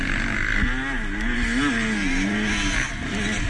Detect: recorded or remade recorded